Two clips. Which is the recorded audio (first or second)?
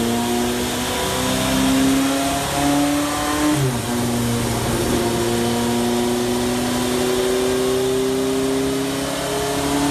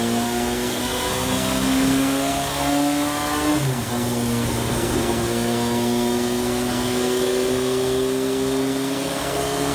first